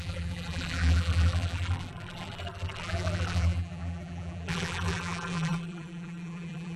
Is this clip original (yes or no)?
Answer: no